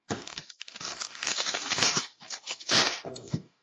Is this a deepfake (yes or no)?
yes